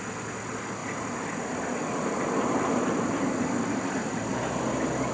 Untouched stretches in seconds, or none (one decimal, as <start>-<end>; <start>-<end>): 0.0-5.1

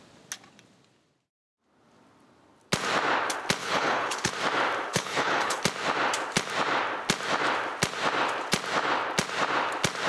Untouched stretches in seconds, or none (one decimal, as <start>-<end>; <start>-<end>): 0.0-3.6; 4.3-4.9; 5.6-10.1

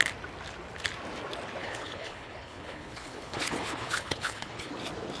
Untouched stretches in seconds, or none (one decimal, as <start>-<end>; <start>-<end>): 0.0-1.6; 4.7-5.2